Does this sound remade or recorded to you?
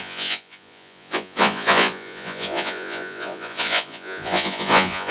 remade